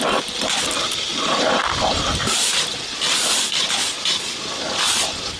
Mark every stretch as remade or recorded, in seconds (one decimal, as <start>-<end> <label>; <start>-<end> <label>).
0.0-5.4 recorded